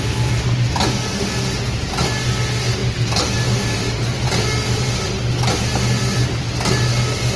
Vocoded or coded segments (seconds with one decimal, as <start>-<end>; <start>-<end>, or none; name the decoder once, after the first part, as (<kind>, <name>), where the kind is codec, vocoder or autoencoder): none